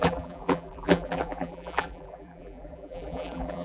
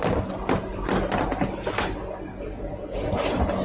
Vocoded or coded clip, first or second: first